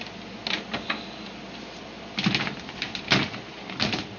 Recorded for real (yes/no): yes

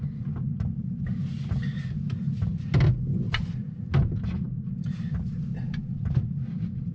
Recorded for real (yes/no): yes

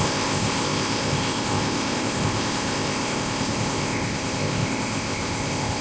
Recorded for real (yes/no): no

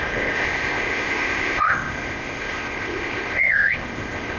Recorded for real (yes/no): no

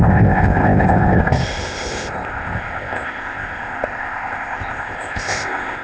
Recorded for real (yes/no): no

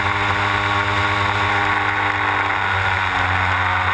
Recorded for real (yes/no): yes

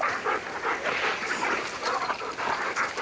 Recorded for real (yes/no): yes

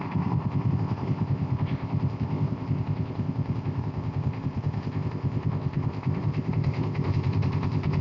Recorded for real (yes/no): no